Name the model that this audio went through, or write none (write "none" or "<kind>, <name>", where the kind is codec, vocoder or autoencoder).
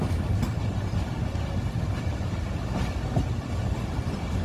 none